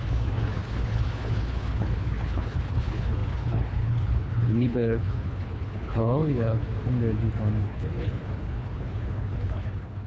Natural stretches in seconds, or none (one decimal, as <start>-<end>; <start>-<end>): 6.6-7.6